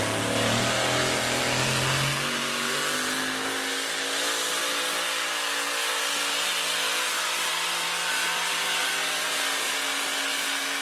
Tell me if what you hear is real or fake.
real